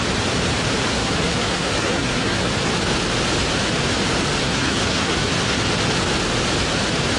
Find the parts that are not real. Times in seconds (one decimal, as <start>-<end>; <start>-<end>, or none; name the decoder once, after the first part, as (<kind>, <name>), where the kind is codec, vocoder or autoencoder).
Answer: 0.9-2.5 (codec, SNAC); 4.4-5.3